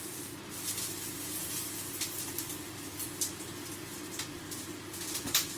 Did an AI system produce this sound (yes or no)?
no